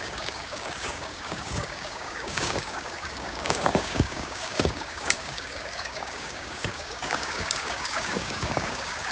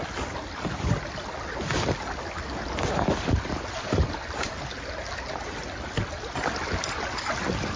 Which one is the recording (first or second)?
second